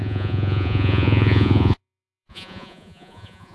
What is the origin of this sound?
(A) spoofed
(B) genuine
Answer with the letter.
A